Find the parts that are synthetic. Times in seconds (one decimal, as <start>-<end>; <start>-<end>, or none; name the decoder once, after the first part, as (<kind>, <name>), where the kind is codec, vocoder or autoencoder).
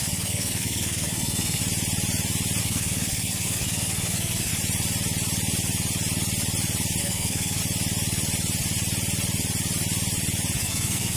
0.0-1.6 (codec, SNAC); 2.6-4.5; 7.0-7.6; 10.6-11.2